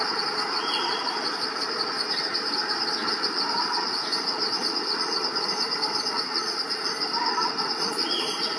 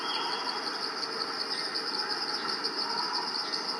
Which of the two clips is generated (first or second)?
first